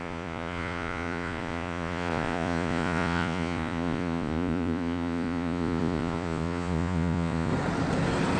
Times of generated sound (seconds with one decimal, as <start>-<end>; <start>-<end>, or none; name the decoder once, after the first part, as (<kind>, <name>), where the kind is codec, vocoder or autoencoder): 0.0-7.5 (vocoder, Vocos)